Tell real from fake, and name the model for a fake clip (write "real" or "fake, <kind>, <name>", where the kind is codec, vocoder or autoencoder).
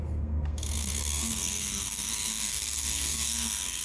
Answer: fake, codec, SNAC